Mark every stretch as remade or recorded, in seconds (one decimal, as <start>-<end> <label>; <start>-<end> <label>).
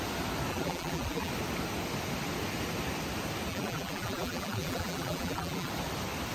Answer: 0.0-0.5 recorded; 0.5-1.3 remade; 1.3-3.5 recorded; 3.5-5.7 remade; 5.7-6.3 recorded